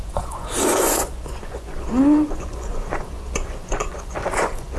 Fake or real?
fake